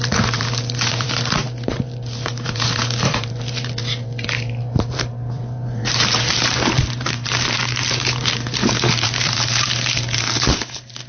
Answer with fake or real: fake